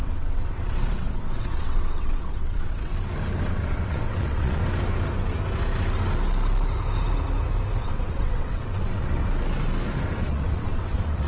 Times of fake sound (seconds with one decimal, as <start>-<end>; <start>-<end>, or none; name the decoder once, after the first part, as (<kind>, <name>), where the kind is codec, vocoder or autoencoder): 0.0-2.9 (vocoder, WaveNeXt); 3.5-4.6; 7.8-9.2; 10.2-11.3